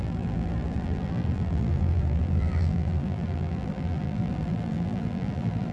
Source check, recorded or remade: remade